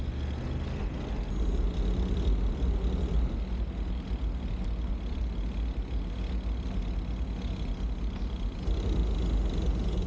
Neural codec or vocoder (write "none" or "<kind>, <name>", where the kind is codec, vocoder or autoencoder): none